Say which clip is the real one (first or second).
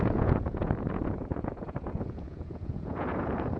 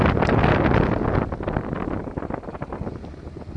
second